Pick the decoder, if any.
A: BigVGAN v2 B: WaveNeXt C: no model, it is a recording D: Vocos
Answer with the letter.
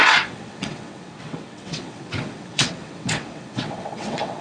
B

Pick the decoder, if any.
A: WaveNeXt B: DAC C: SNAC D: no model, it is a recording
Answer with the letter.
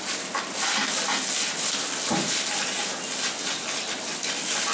D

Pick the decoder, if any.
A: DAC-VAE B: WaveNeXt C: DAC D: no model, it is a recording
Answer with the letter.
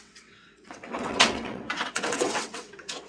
B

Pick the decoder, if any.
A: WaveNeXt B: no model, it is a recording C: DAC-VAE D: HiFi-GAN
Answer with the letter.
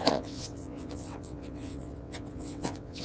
A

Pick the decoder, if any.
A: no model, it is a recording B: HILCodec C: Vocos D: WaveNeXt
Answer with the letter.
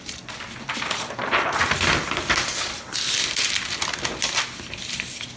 A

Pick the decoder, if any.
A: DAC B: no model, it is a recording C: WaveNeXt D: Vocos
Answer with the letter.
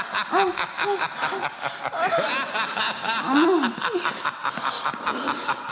B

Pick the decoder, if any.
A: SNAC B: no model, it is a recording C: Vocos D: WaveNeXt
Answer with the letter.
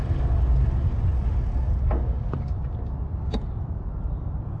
B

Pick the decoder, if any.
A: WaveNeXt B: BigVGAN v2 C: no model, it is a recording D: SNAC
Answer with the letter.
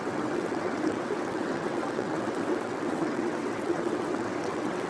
A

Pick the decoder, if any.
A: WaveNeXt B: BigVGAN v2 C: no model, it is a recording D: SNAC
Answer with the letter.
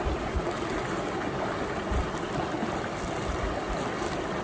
C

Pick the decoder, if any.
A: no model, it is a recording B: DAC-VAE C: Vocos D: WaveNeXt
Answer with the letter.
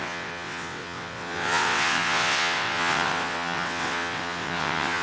D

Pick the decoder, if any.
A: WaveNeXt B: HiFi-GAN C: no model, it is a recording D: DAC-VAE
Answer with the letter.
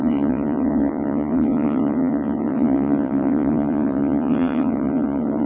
A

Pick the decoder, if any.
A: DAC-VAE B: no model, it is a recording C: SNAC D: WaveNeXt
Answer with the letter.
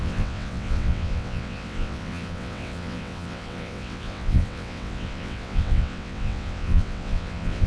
D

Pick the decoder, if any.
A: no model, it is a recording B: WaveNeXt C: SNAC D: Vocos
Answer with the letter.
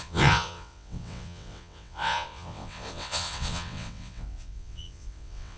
B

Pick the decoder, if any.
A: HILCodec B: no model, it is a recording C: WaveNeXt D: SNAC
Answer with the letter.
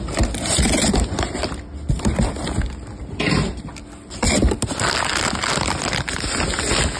B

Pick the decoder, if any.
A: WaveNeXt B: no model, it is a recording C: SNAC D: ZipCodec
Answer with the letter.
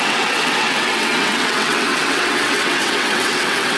A